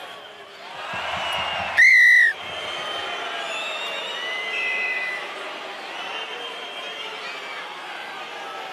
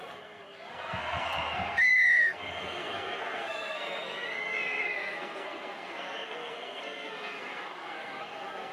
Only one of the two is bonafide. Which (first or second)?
first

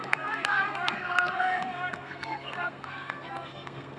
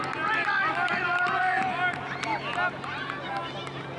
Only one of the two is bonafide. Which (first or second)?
second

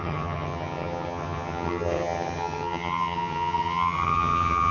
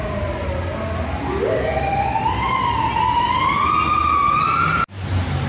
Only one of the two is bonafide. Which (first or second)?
second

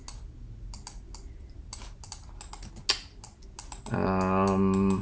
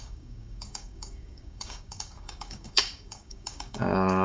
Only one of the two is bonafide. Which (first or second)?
first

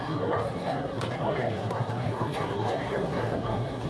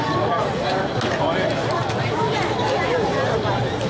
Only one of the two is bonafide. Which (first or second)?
second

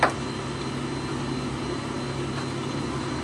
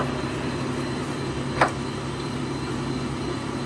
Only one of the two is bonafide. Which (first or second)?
first